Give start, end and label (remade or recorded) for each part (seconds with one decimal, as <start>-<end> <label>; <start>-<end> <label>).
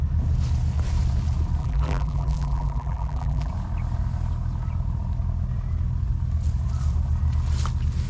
0.0-1.6 recorded; 1.6-3.5 remade; 3.5-8.1 recorded